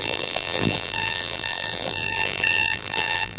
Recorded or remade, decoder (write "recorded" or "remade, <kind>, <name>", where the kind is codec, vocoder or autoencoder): remade, vocoder, BigVGAN v2